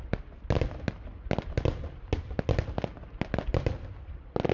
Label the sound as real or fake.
real